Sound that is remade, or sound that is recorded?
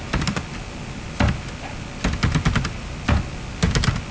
recorded